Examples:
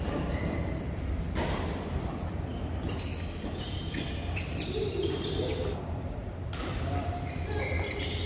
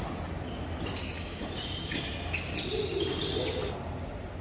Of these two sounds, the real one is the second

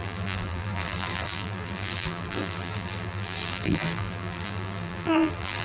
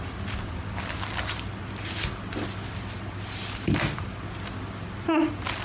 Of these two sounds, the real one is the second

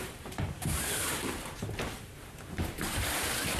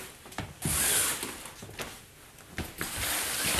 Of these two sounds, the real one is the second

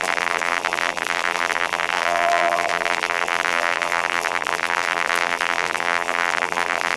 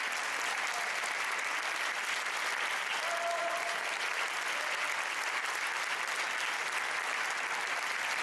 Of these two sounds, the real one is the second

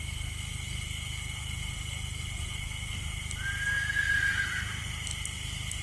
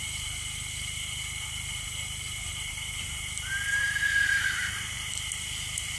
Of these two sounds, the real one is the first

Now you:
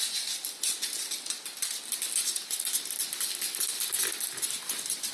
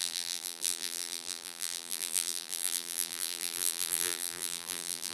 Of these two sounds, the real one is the first